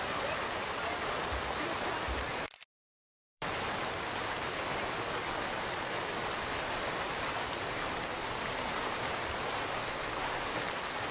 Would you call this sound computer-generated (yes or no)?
yes